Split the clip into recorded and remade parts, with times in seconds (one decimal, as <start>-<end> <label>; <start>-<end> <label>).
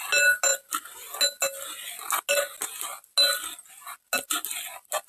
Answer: 0.0-5.1 recorded